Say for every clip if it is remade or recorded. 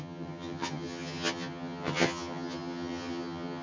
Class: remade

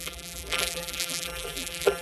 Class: remade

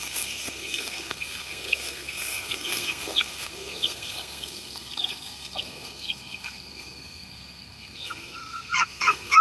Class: remade